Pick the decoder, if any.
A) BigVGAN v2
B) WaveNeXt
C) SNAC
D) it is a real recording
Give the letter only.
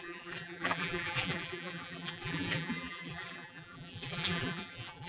A